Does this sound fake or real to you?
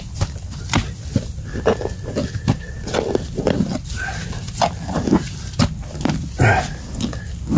real